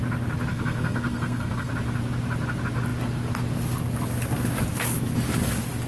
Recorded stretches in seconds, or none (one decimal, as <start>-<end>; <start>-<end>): 0.0-0.5; 1.7-5.9